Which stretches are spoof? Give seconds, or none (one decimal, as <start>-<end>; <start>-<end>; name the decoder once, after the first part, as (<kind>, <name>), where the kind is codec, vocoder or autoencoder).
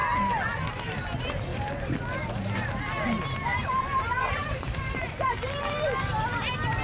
0.7-6.8 (vocoder, BigVGAN v2)